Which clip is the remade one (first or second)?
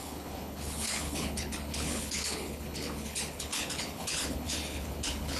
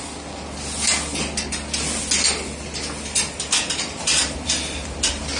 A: first